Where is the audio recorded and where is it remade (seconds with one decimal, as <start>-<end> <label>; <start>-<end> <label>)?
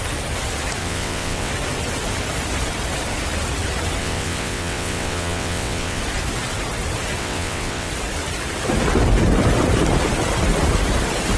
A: 0.0-0.8 recorded; 0.8-1.5 remade; 1.5-4.0 recorded; 4.0-6.0 remade; 6.0-7.2 recorded; 7.2-7.9 remade; 7.9-11.4 recorded